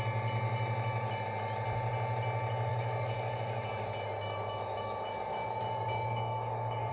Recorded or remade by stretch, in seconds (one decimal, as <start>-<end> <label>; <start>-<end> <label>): 0.0-2.7 recorded; 2.7-6.9 remade